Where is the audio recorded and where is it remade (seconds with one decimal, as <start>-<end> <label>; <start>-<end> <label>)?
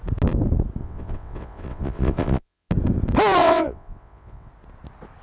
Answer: 0.0-0.8 recorded; 0.8-2.7 remade; 2.7-3.4 recorded; 3.4-4.5 remade; 4.5-5.2 recorded